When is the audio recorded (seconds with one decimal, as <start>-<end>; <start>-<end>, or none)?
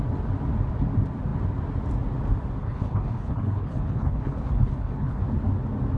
0.0-2.6; 5.2-6.0